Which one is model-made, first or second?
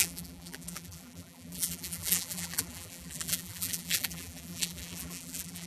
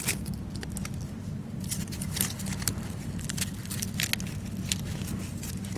first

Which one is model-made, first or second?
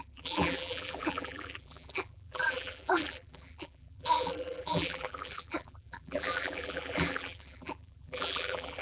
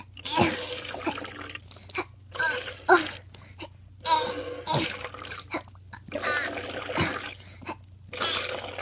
first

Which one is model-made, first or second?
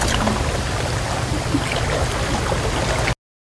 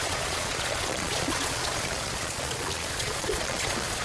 second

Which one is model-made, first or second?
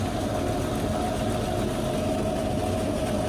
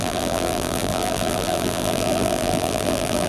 second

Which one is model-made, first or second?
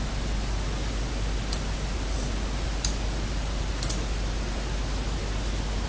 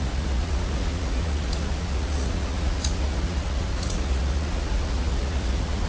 second